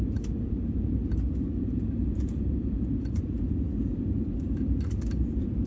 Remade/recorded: remade